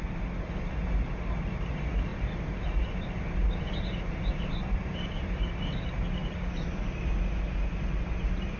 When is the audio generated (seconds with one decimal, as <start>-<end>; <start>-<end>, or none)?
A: 2.1-5.5